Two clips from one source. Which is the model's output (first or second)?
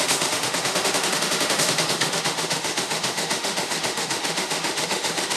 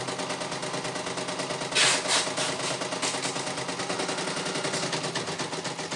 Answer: first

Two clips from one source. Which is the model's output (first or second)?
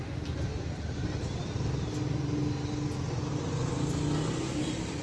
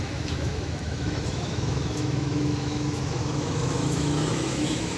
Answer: second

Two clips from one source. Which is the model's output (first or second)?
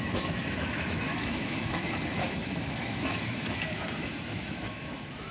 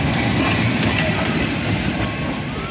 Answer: first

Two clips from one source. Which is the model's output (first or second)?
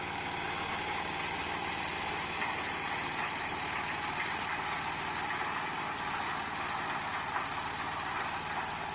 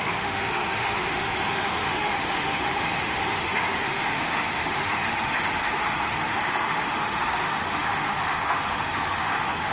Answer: second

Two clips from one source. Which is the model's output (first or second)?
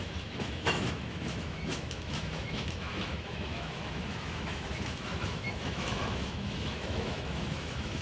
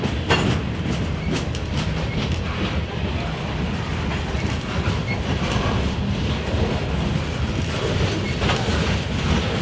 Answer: first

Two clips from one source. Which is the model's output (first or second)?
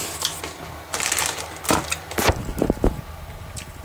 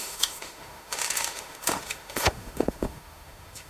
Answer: second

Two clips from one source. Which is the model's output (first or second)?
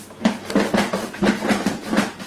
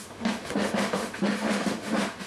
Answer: second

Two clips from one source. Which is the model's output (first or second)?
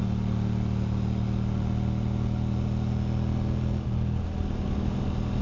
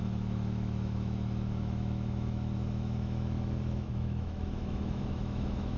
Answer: second